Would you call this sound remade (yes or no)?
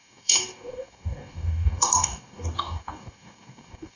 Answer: yes